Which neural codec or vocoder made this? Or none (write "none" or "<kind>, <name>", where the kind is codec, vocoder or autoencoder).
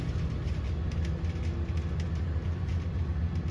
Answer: none